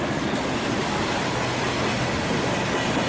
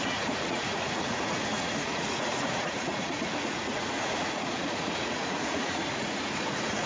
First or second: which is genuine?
first